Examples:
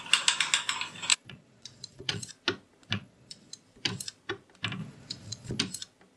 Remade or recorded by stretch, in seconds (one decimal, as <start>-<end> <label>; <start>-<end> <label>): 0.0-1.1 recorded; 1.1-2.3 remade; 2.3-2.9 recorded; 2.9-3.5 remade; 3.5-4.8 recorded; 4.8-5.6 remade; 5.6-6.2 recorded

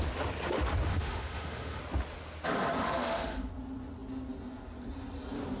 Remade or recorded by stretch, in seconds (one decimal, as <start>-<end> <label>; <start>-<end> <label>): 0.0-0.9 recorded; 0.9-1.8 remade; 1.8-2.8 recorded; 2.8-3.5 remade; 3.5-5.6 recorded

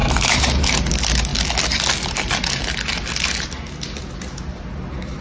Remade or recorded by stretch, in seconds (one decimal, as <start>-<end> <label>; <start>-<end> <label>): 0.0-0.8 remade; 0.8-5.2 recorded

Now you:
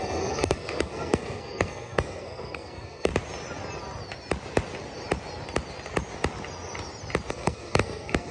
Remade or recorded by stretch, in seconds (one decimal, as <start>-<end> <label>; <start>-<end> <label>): 0.0-3.1 remade; 3.1-7.3 recorded; 7.3-8.3 remade

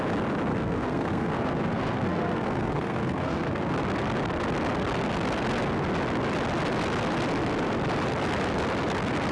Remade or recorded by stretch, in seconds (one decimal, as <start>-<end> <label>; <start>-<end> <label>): 0.0-0.5 recorded; 0.5-3.7 remade; 3.7-9.3 recorded